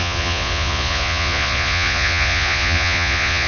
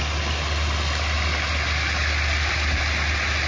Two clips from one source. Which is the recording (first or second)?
second